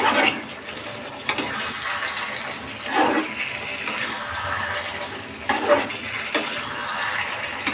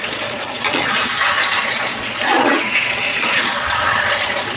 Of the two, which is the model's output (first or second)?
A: second